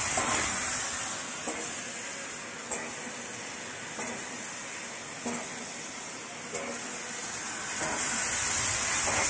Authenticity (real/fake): real